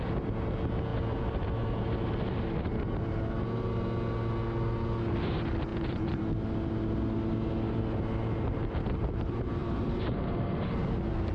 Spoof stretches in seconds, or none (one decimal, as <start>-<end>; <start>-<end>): 5.7-6.2